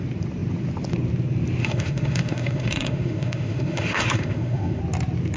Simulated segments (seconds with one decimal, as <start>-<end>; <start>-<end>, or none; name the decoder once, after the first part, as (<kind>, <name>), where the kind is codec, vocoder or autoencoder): 1.6-4.8 (autoencoder, DAC-VAE)

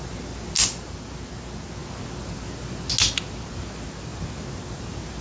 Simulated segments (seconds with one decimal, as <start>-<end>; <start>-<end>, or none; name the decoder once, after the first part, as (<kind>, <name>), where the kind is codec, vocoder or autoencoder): none